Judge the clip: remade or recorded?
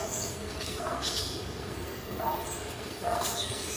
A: remade